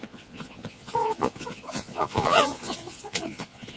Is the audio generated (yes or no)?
yes